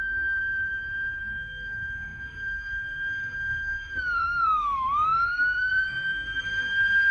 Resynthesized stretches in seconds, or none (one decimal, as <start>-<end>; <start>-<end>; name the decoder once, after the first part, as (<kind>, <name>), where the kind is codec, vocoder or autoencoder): 0.0-0.4 (codec, SNAC); 1.2-7.1

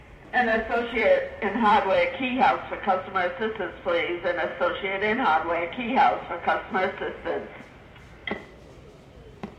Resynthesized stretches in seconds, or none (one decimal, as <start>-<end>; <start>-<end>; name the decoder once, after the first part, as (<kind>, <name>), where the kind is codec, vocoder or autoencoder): 0.5-2.5 (vocoder, BigVGAN v2); 4.5-6.7; 8.2-9.6

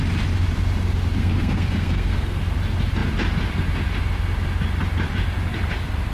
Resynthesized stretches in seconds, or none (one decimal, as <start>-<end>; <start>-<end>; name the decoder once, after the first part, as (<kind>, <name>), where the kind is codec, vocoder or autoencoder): 1.2-2.4 (codec, SNAC)